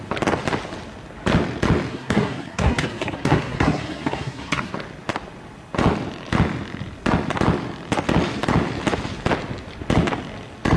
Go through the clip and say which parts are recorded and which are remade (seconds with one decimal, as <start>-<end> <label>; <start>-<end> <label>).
0.0-1.9 recorded; 1.9-4.7 remade; 4.7-10.8 recorded